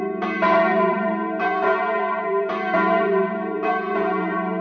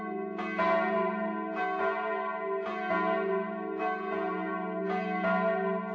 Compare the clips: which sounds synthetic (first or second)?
first